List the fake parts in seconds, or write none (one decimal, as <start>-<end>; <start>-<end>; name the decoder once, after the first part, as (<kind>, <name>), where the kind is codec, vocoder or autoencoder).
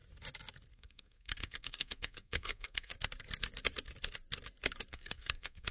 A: 0.7-2.9 (codec, SNAC); 4.9-5.7